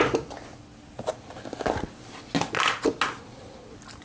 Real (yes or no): yes